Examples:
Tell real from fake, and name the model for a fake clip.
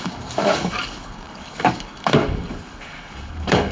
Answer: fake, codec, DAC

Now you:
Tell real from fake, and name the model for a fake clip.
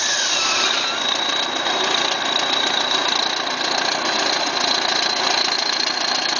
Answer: real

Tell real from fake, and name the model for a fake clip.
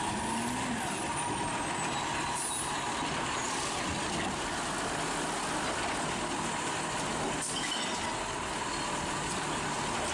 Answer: real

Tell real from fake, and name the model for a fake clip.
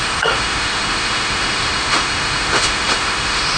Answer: fake, autoencoder, DAC-VAE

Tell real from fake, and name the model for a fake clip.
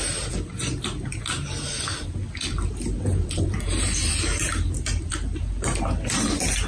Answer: real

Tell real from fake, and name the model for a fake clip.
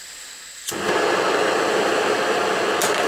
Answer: real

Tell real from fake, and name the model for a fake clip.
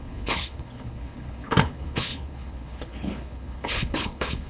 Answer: fake, codec, HILCodec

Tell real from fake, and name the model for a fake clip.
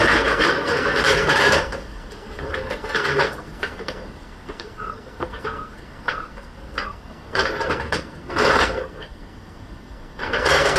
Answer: fake, codec, SNAC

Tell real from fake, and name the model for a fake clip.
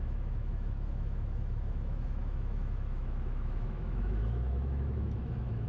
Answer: fake, autoencoder, DAC-VAE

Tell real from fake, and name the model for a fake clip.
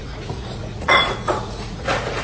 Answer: fake, vocoder, Vocos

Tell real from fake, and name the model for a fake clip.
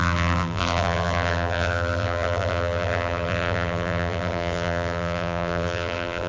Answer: fake, vocoder, BigVGAN v2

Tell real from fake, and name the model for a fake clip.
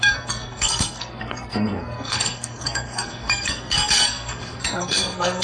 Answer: fake, codec, SNAC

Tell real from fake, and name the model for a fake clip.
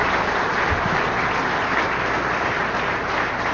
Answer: real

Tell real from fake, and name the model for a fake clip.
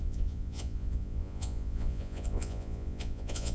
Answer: fake, vocoder, Vocos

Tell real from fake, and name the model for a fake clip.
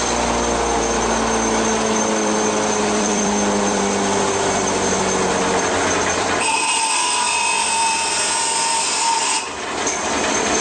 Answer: fake, vocoder, BigVGAN v2